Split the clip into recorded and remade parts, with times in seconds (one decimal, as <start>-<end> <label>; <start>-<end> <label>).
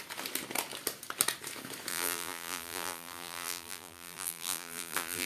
0.0-1.9 recorded; 1.9-5.3 remade